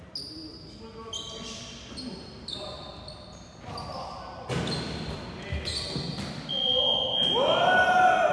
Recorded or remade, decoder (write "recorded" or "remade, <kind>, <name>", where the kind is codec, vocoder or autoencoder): recorded